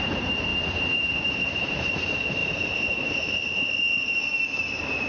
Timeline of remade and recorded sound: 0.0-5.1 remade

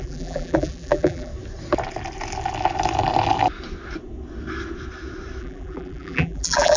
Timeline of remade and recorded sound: 0.0-1.3 remade; 1.3-5.4 recorded; 5.4-6.8 remade

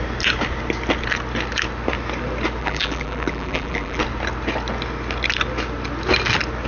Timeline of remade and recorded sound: 0.0-2.6 recorded; 2.6-4.0 remade; 4.0-6.7 recorded

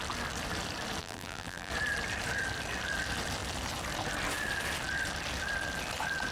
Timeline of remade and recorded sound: 0.0-1.0 recorded; 1.0-1.7 remade; 1.7-6.3 recorded